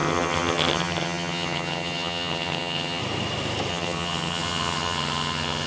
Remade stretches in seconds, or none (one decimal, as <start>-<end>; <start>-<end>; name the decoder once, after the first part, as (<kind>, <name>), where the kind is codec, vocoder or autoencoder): 0.0-3.0 (vocoder, HiFi-GAN); 3.7-5.7